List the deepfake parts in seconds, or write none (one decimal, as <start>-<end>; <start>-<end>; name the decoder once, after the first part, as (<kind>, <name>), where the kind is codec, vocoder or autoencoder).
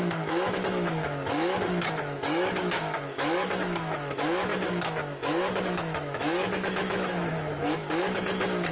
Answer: 0.0-8.7 (autoencoder, DAC-VAE)